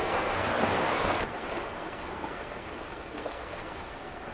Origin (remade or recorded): remade